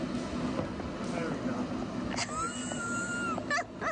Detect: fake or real real